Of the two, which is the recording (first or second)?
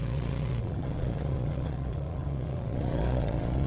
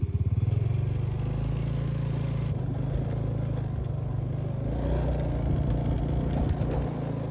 second